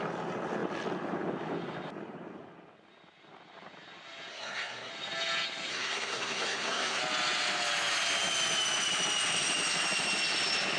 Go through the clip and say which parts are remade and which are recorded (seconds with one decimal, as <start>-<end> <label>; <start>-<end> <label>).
0.0-4.3 recorded; 4.3-4.9 remade; 4.9-5.7 recorded; 5.7-7.0 remade; 7.0-10.8 recorded

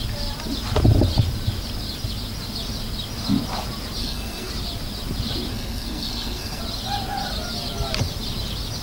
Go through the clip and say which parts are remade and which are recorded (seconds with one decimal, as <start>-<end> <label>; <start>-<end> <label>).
0.0-4.0 recorded; 4.0-4.5 remade; 4.5-5.5 recorded; 5.5-6.6 remade; 6.6-8.8 recorded

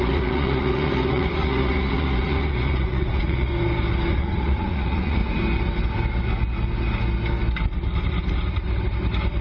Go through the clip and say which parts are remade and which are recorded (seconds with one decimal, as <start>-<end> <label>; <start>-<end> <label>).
0.0-3.5 remade; 3.5-4.1 recorded; 4.1-5.2 remade; 5.2-9.4 recorded

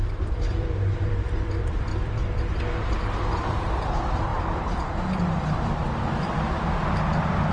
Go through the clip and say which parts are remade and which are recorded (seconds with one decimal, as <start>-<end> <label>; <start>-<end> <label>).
0.0-1.9 remade; 1.9-2.9 recorded; 2.9-7.5 remade